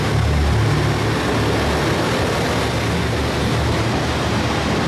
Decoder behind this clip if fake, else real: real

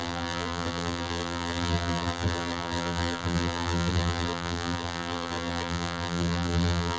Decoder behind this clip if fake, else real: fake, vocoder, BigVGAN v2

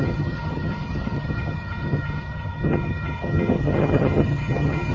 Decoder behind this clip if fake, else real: fake, vocoder, HiFi-GAN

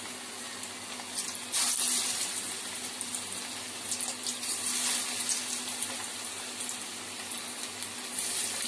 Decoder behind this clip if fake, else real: real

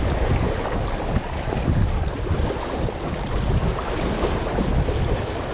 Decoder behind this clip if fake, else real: real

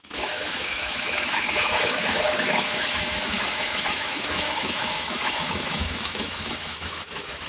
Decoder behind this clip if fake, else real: fake, autoencoder, DAC-VAE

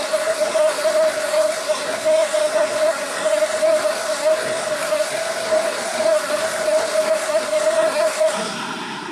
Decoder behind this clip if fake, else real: fake, codec, SNAC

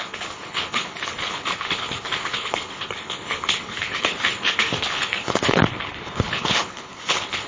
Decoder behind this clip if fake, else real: fake, codec, HILCodec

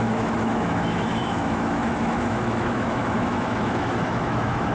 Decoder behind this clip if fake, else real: fake, autoencoder, DAC-VAE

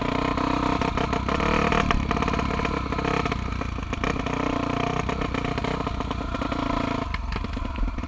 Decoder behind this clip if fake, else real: real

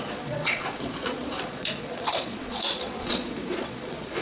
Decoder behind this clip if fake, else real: fake, vocoder, Vocos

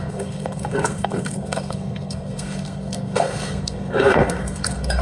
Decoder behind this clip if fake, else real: fake, codec, SNAC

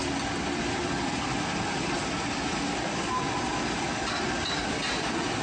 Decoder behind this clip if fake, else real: fake, vocoder, BigVGAN v2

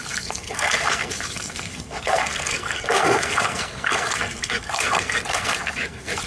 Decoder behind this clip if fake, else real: fake, codec, SNAC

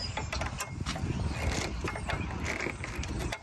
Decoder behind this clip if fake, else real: real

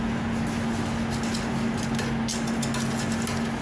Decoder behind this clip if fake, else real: real